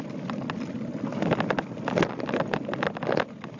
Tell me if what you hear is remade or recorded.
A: recorded